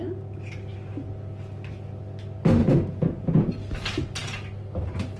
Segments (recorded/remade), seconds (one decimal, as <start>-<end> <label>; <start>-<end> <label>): 0.0-2.6 recorded; 2.6-3.5 remade; 3.5-5.2 recorded